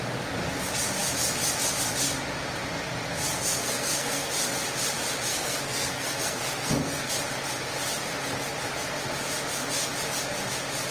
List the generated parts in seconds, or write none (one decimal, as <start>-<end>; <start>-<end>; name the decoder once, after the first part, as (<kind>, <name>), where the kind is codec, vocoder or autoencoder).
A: 3.4-4.3 (codec, SNAC); 5.3-7.1